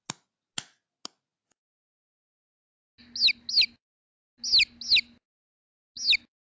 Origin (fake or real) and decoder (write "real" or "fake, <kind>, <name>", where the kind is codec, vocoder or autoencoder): real